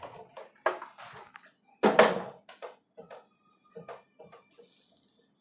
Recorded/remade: recorded